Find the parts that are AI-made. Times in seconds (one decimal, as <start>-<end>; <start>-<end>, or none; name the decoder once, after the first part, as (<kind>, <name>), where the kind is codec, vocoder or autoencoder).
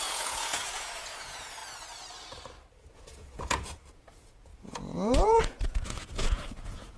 0.0-1.6 (vocoder, Vocos); 2.9-7.0